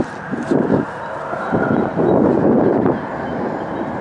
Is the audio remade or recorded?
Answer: recorded